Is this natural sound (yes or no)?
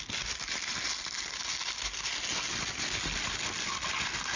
yes